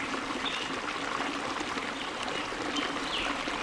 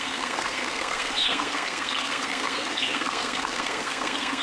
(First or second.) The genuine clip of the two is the first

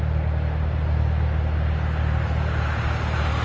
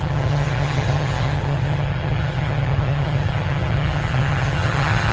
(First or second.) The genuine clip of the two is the first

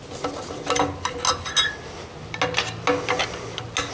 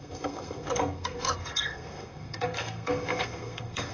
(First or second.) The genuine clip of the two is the first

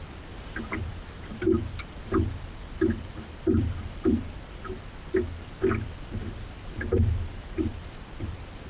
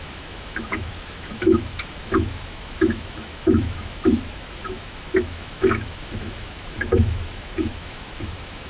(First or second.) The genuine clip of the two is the first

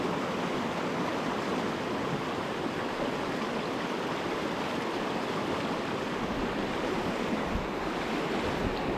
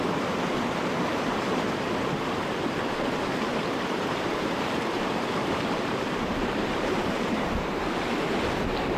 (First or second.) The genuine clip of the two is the first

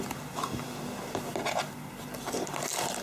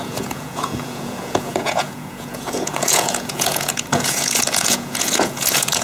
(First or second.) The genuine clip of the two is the first